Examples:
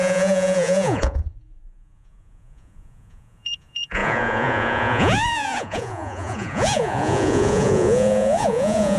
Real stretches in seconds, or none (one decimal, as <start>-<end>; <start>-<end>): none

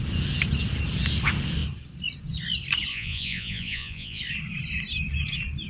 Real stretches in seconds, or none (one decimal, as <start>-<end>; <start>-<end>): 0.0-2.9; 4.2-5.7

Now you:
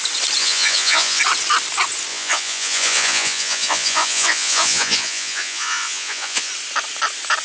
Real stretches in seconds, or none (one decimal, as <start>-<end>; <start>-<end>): 0.0-0.4; 1.2-2.1; 6.5-7.4

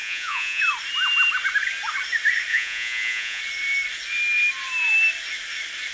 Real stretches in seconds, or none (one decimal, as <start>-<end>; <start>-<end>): 0.6-2.5; 3.4-5.9